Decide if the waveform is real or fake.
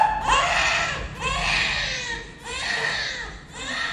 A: real